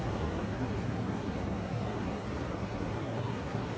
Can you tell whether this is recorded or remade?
remade